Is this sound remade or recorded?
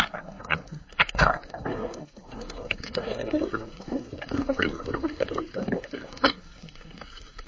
remade